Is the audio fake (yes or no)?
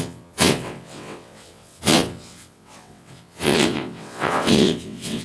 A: yes